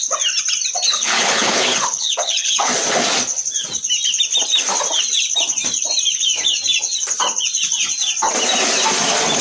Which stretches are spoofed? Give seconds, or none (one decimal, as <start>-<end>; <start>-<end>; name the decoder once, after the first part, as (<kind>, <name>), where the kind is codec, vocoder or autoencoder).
0.9-2.7 (codec, HILCodec)